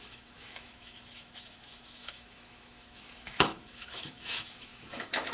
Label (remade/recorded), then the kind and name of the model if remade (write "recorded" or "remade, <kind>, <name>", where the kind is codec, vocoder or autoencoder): remade, autoencoder, DAC-VAE